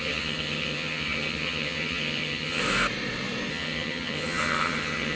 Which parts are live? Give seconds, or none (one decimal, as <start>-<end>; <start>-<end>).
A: 2.6-3.5